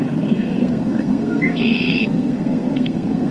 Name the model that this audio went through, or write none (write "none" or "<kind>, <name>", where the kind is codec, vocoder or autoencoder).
codec, SNAC